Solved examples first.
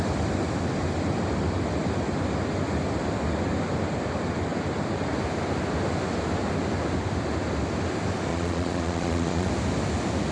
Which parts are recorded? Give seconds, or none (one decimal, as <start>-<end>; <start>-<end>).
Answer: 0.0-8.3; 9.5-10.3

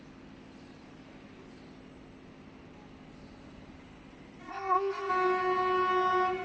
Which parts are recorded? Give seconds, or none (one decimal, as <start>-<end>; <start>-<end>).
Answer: 0.0-4.4; 5.1-6.4

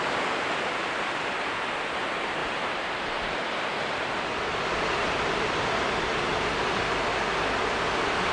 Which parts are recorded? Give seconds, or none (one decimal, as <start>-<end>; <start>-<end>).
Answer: 0.0-2.4; 3.5-8.3

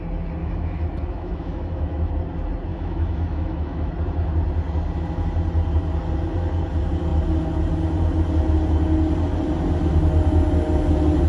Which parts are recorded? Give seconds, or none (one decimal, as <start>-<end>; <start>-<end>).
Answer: 0.0-0.4; 2.1-2.7; 3.9-11.3